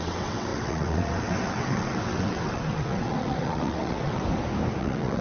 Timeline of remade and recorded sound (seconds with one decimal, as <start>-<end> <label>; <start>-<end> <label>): 0.0-4.2 remade; 4.2-4.8 recorded; 4.8-5.2 remade